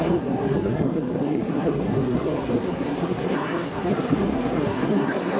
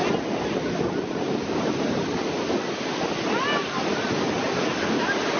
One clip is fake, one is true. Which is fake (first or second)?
first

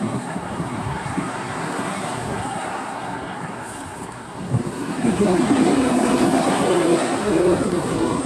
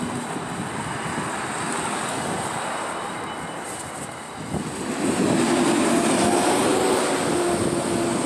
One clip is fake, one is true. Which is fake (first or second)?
first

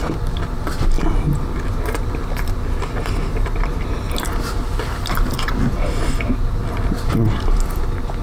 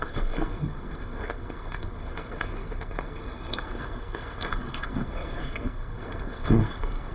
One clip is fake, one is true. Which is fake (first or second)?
second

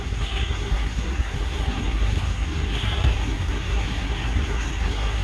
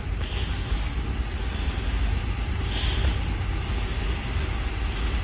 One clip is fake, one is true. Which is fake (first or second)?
first